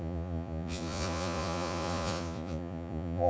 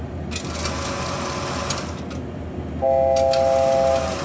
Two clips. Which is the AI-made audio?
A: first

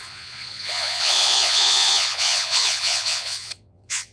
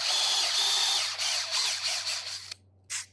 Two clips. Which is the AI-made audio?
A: first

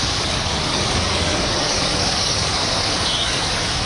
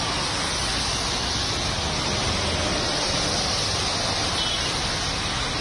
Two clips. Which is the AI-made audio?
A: first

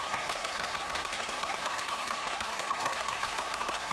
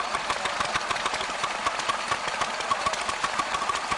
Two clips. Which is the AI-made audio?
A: first